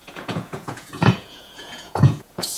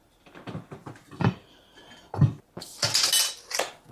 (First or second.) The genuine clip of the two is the second